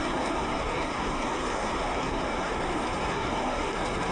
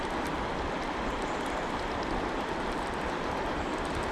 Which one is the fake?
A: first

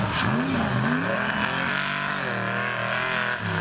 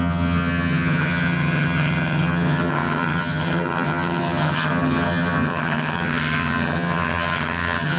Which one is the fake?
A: second